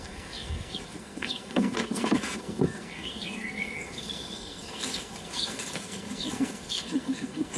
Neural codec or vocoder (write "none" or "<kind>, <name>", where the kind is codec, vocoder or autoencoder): codec, SNAC